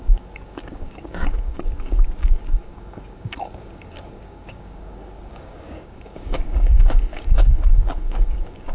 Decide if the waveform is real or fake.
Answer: fake